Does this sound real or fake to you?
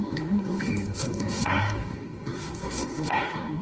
fake